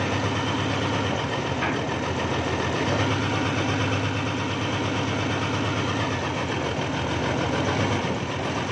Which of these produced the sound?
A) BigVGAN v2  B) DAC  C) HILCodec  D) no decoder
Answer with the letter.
D